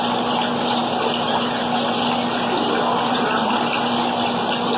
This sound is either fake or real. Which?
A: real